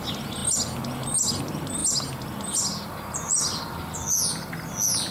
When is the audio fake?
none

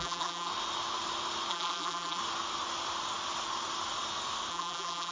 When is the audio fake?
0.0-0.5 (vocoder, BigVGAN v2); 1.5-2.2; 4.5-5.1

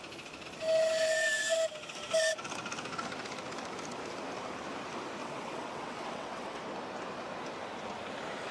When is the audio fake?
5.2-6.6 (vocoder, WaveNeXt)